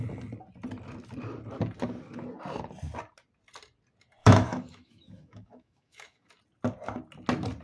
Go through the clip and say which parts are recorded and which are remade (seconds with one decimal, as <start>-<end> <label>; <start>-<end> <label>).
0.0-4.2 recorded; 4.2-6.3 remade; 6.3-7.6 recorded